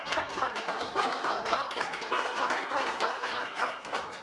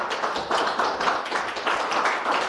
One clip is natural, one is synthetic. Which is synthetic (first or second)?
first